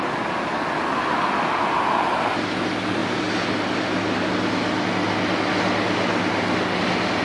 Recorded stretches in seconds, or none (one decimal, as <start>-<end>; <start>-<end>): 0.0-7.2